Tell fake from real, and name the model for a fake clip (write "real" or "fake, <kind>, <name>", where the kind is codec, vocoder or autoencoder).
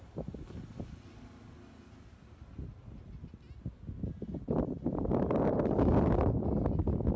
real